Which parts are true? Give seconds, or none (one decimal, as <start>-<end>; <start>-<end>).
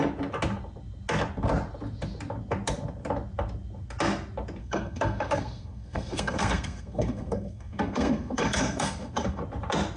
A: 0.0-4.6; 9.4-10.0